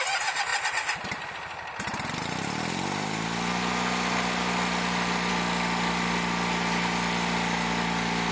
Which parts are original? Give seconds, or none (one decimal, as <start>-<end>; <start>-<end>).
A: 0.0-8.3